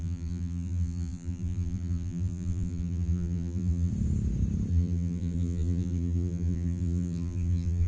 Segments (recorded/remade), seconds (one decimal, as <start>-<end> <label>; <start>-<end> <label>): 0.0-3.9 remade; 3.9-4.7 recorded; 4.7-7.9 remade